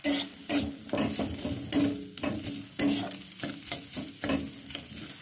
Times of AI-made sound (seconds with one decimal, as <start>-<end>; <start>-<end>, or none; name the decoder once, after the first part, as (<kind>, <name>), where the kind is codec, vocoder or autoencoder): none